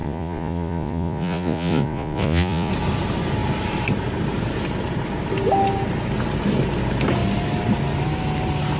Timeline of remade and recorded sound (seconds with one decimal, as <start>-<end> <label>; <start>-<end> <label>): 0.0-2.7 remade; 2.7-8.8 recorded